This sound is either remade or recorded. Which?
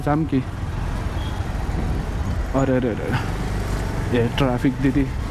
recorded